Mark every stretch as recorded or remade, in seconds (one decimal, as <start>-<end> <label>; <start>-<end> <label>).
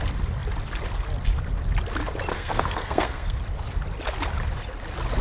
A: 0.0-2.3 recorded; 2.3-3.4 remade; 3.4-5.2 recorded